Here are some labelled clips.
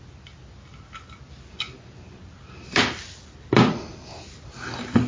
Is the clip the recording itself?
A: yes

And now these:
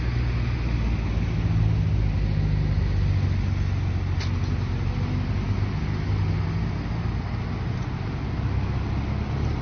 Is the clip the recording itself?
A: yes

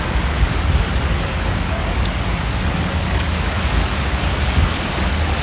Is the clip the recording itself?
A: no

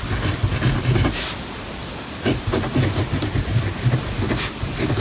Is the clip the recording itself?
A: yes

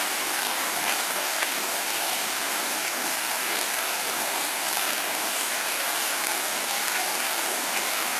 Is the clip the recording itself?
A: no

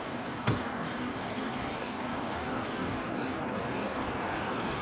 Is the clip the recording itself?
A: no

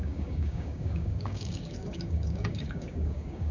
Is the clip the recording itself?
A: no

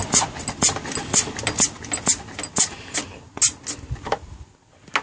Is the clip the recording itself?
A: yes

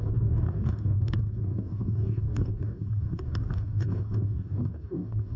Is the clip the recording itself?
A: no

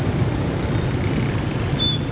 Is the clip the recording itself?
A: yes